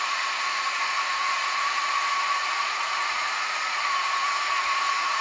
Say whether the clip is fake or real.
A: fake